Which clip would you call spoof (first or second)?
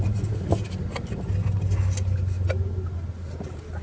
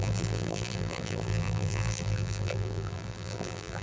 second